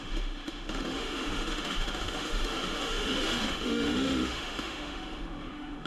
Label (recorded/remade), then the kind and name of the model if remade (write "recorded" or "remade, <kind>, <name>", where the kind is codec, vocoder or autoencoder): remade, autoencoder, DAC-VAE